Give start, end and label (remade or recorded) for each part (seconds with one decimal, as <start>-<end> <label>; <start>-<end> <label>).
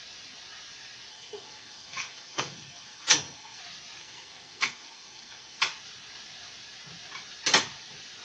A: 0.0-1.1 recorded; 1.1-3.6 remade; 3.6-4.0 recorded; 4.0-5.6 remade; 5.6-8.2 recorded